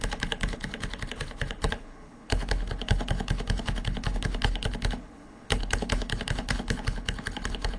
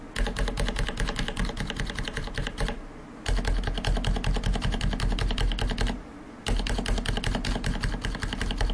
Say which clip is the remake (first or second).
first